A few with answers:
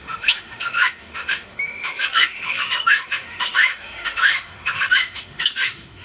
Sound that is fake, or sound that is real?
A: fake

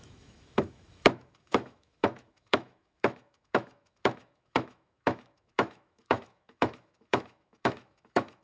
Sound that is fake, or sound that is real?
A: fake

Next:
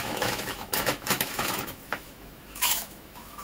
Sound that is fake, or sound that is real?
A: fake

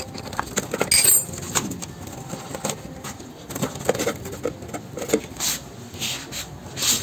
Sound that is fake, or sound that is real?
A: real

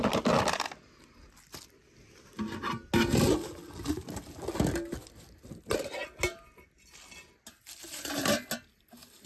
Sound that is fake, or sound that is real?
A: real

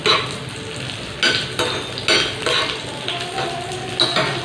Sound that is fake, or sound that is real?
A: real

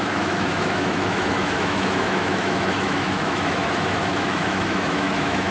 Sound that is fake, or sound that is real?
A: fake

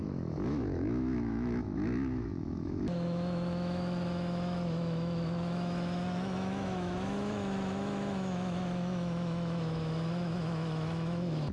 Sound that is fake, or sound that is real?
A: fake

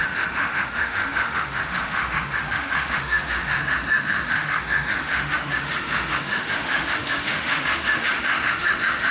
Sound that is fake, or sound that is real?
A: fake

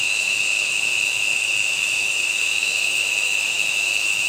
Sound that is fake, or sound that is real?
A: fake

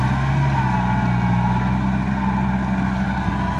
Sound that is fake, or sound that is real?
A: real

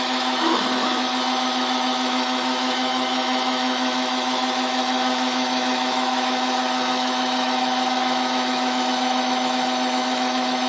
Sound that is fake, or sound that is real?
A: fake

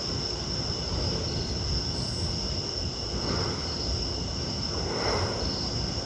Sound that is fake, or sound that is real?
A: real